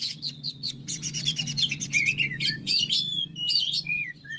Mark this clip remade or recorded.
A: remade